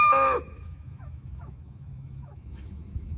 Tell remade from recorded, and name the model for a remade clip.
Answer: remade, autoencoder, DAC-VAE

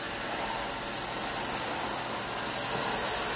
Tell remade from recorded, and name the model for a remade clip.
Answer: recorded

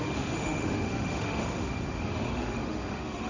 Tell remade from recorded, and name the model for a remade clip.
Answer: remade, autoencoder, DAC-VAE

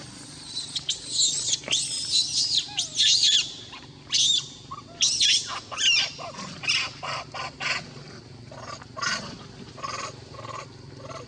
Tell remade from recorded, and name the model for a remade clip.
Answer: recorded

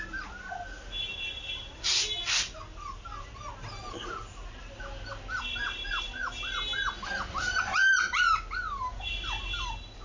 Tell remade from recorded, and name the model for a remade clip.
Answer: recorded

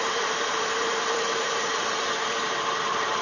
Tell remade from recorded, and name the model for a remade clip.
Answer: remade, vocoder, BigVGAN v2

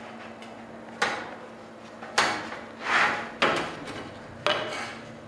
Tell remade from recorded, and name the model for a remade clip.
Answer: recorded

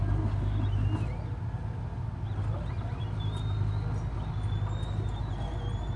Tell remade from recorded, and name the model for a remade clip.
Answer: recorded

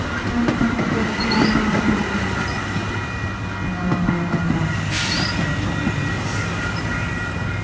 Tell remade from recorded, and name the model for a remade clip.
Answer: recorded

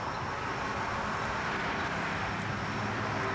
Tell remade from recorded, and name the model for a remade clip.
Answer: recorded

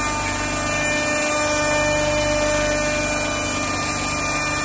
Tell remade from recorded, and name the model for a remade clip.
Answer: recorded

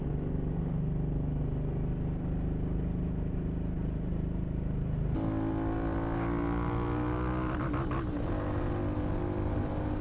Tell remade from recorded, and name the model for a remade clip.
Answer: recorded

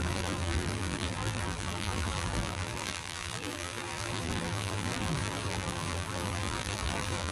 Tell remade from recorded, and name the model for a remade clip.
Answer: remade, vocoder, BigVGAN v2